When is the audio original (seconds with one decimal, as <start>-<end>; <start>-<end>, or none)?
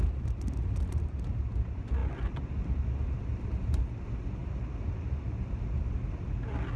0.0-6.8